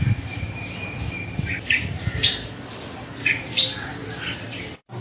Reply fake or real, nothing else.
real